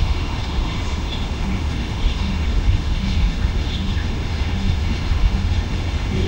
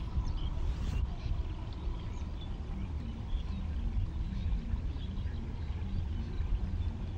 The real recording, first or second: second